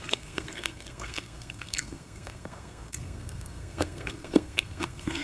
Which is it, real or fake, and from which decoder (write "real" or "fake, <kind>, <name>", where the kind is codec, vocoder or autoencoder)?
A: fake, codec, SNAC